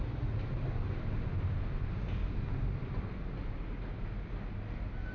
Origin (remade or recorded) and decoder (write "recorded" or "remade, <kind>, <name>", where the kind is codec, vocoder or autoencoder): recorded